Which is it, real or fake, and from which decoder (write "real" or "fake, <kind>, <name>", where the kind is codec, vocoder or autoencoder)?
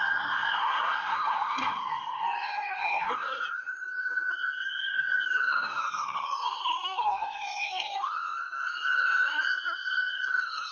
fake, codec, SNAC